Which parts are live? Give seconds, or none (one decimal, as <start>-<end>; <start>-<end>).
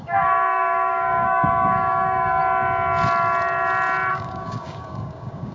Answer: 2.4-4.1